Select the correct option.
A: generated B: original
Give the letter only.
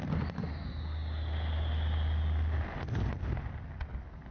B